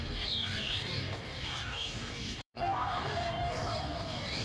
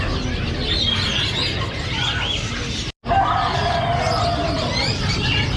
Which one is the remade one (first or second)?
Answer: first